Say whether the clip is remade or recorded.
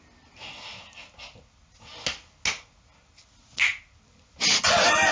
recorded